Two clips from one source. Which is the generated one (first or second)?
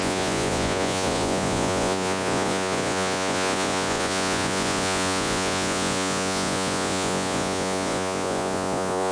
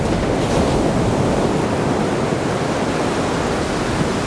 first